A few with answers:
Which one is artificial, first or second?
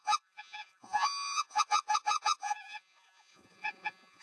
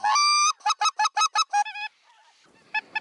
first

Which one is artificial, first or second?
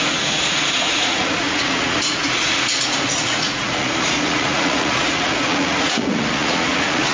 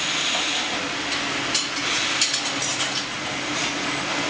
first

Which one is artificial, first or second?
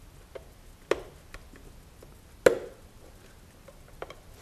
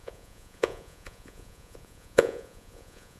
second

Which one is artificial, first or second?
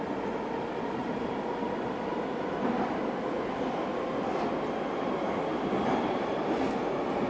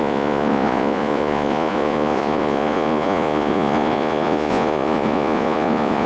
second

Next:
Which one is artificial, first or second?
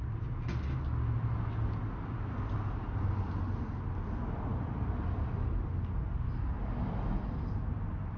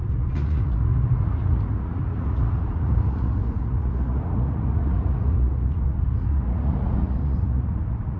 second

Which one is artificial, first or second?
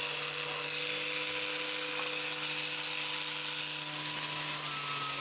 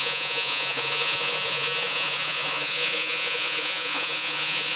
second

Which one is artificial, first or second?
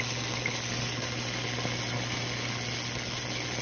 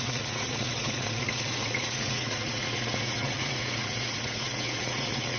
second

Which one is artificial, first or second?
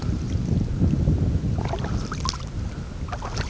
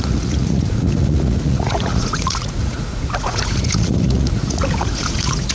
second